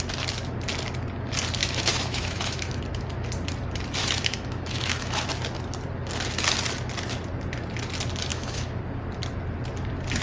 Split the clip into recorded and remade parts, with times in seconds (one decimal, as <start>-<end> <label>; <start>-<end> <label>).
0.0-1.6 recorded; 1.6-2.8 remade; 2.8-4.0 recorded; 4.0-5.3 remade; 5.3-8.3 recorded; 8.3-8.8 remade; 8.8-10.2 recorded